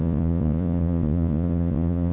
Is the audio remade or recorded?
remade